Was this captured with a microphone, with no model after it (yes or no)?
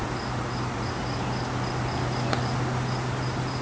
yes